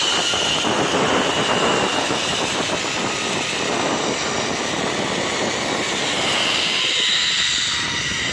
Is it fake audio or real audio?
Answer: real